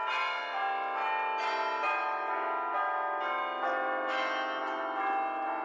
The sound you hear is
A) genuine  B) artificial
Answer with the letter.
A